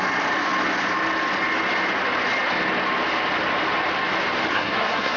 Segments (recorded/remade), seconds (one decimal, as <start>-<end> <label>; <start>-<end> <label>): 0.0-4.5 recorded; 4.5-5.2 remade

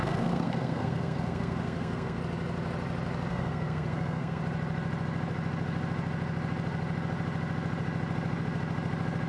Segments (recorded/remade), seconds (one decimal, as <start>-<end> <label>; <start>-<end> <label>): 0.0-2.2 remade; 2.2-3.3 recorded; 3.3-4.4 remade; 4.4-9.3 recorded

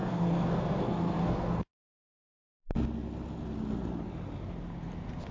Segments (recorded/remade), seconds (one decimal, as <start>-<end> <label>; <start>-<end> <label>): 0.0-2.3 remade; 2.3-5.3 recorded

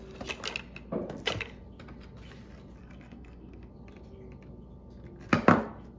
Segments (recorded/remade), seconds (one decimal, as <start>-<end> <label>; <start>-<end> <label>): 0.0-2.8 recorded; 2.8-3.7 remade; 3.7-6.0 recorded

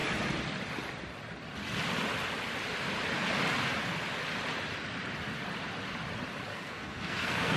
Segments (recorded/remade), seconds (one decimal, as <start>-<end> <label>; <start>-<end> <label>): 0.0-6.5 recorded; 6.5-7.6 remade

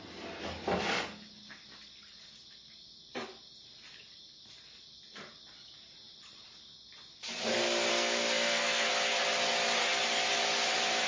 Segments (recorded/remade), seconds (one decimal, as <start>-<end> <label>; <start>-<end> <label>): 0.0-7.9 recorded; 7.9-8.9 remade; 8.9-11.1 recorded